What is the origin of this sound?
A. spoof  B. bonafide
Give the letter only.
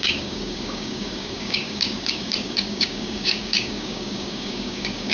A